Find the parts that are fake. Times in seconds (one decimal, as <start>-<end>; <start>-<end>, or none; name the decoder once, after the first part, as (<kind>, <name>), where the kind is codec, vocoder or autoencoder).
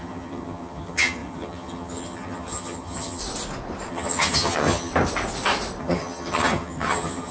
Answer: 0.0-3.2 (vocoder, HiFi-GAN); 3.9-4.9; 5.8-7.3